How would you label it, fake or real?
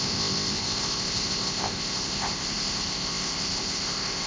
fake